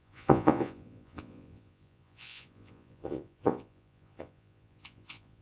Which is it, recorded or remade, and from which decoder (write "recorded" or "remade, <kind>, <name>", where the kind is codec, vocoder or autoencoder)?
remade, vocoder, Vocos